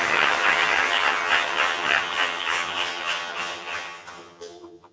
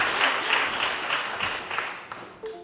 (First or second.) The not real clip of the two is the first